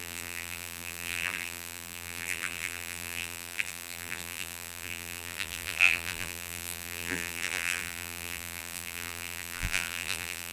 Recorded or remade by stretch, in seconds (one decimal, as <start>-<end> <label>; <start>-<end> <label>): 0.0-10.5 remade